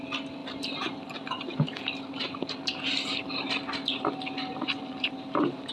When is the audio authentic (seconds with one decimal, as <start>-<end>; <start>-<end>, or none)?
0.0-0.4; 2.4-4.5